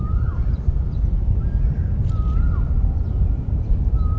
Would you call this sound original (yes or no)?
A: no